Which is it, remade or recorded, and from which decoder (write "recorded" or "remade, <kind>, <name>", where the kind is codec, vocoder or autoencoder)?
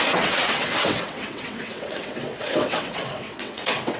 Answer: remade, vocoder, WaveNeXt